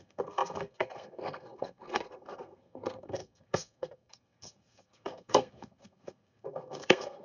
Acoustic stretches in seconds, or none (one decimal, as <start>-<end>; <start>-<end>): none